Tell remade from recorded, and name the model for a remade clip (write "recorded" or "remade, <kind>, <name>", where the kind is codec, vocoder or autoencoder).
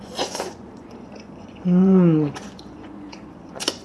remade, vocoder, Vocos